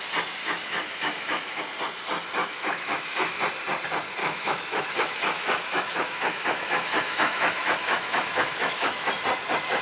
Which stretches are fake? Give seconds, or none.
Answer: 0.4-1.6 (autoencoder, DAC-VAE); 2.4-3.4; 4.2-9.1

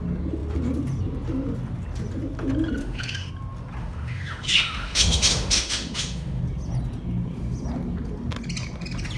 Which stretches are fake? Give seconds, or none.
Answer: 2.8-3.3 (autoencoder, DAC-VAE); 3.8-6.4

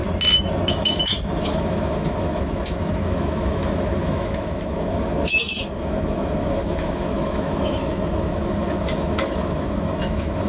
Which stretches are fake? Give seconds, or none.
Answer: 0.7-10.5 (autoencoder, DAC-VAE)

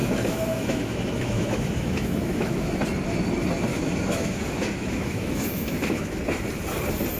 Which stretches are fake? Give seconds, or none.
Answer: 0.0-2.7 (autoencoder, DAC-VAE); 3.7-6.2

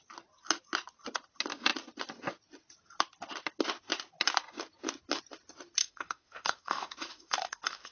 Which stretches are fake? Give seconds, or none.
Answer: 5.8-7.9 (autoencoder, DAC-VAE)

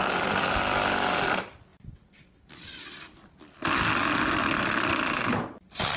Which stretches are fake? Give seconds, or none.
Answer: none

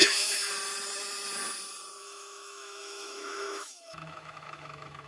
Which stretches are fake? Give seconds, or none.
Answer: 0.0-0.5 (autoencoder, DAC-VAE); 2.0-5.1